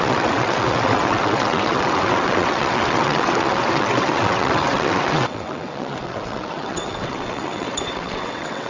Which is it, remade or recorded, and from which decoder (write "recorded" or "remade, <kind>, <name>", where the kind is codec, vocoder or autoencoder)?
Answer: remade, vocoder, WaveNeXt